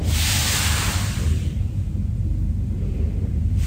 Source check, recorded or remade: remade